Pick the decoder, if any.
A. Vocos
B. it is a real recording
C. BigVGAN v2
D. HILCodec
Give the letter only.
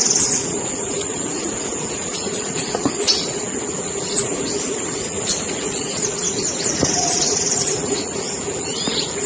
A